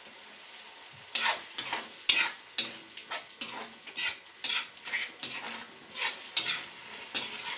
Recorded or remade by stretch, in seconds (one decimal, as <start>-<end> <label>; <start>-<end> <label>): 0.0-7.6 recorded